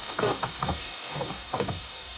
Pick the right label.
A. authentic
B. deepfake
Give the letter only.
B